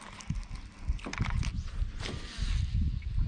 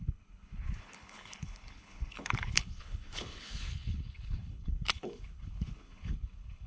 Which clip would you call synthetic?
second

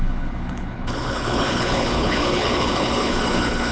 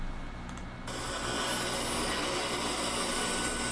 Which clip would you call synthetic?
first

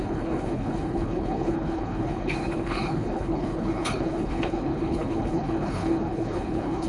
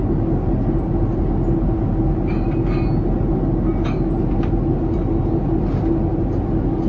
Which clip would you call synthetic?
first